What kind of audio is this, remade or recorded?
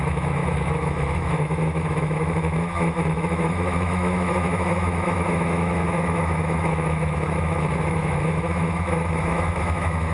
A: remade